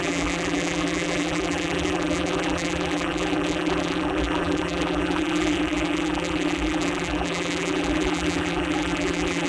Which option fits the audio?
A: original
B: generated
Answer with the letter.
B